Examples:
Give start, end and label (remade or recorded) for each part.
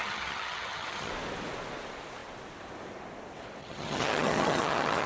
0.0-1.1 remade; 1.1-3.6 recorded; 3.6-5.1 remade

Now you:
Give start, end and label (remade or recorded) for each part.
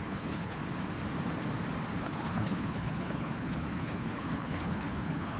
0.0-0.6 remade; 0.6-2.0 recorded; 2.0-5.4 remade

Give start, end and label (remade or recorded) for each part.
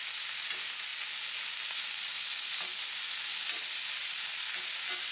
0.0-5.1 recorded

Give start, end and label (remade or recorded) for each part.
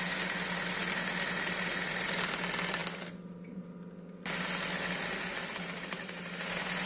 0.0-6.9 recorded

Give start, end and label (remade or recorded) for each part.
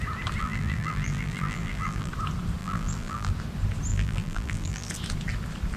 0.0-0.4 recorded; 0.4-2.1 remade; 2.1-2.6 recorded; 2.6-3.3 remade; 3.3-3.9 recorded; 3.9-4.9 remade; 4.9-5.8 recorded